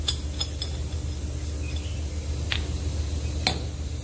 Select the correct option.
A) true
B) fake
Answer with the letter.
A